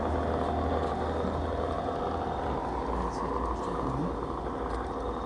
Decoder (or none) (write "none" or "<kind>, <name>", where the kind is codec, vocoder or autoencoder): none